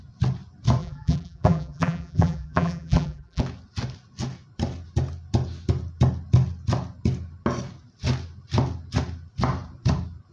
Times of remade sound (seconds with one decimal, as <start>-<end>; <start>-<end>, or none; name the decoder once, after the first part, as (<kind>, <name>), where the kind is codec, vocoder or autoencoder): 0.8-3.4 (vocoder, BigVGAN v2)